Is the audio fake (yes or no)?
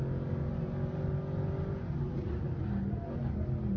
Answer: no